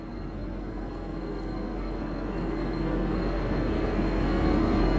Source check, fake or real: fake